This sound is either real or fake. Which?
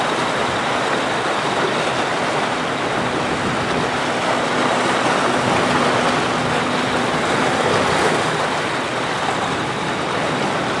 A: real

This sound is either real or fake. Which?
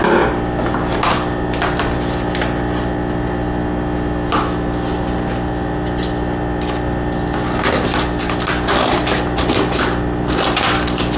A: real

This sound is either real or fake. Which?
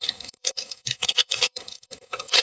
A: fake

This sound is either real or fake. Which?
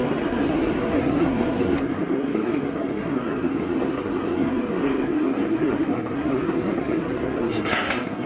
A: fake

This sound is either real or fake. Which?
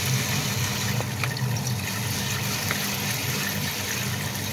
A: real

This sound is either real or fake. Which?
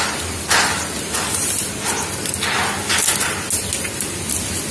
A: real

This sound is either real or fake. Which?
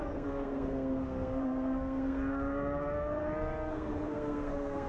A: fake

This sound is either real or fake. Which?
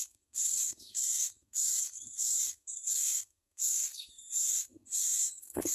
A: fake